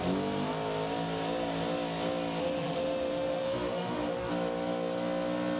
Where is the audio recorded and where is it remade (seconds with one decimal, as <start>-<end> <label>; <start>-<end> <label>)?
0.0-2.4 recorded; 2.4-4.3 remade; 4.3-5.6 recorded